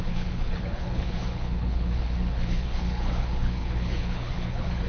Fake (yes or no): yes